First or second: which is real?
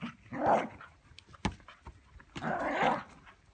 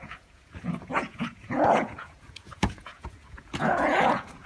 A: first